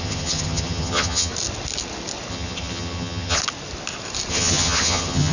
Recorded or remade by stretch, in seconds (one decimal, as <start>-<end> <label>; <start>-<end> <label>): 0.0-1.3 remade; 1.3-2.3 recorded; 2.3-3.4 remade; 3.4-4.3 recorded; 4.3-5.3 remade